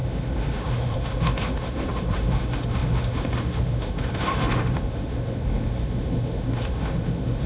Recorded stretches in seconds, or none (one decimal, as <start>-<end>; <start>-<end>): none